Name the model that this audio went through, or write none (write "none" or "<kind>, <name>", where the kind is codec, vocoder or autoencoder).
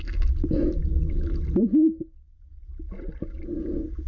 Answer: none